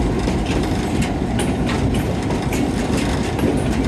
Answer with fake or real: real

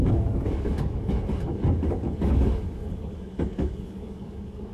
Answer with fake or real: fake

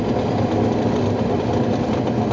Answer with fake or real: real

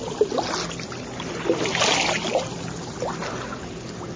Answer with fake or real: real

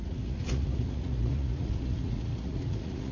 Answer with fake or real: fake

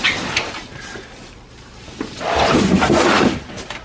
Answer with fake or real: real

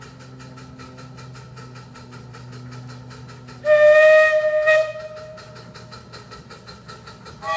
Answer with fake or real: real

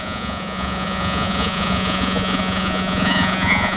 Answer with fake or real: fake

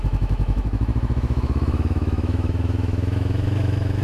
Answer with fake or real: fake